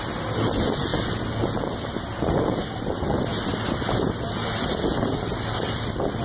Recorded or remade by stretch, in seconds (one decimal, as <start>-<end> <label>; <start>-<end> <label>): 0.0-6.2 recorded